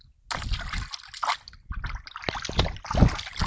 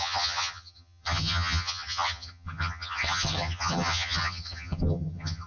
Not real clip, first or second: second